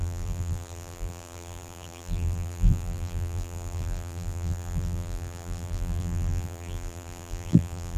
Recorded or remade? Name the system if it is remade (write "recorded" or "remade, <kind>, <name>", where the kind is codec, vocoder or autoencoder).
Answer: remade, vocoder, BigVGAN v2